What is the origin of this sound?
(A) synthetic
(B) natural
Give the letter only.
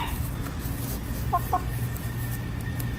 B